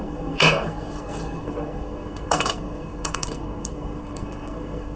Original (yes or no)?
no